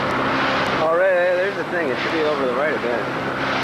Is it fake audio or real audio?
real